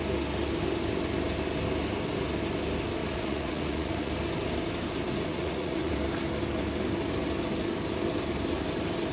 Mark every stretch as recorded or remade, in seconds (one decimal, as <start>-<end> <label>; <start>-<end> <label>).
0.0-3.0 recorded; 3.0-4.1 remade; 4.1-5.3 recorded; 5.3-5.9 remade; 5.9-9.1 recorded